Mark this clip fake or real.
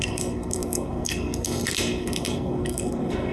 fake